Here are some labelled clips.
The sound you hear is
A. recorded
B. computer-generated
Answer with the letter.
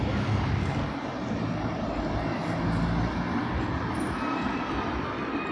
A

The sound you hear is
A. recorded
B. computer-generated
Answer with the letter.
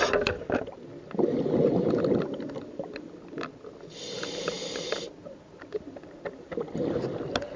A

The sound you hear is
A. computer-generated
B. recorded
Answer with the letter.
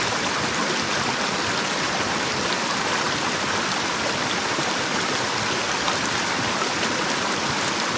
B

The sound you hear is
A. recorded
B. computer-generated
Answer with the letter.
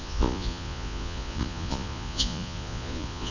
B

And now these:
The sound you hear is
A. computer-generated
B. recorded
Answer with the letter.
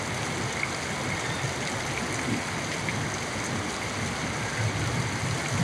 B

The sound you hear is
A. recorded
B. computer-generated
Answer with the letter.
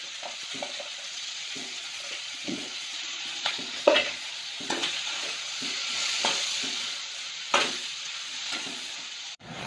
B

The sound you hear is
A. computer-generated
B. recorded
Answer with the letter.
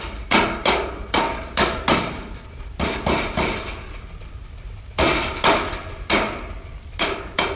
B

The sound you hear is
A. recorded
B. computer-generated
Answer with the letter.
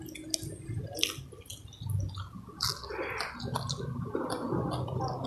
A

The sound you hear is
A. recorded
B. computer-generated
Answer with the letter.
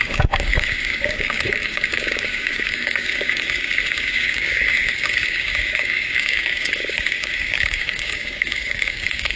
B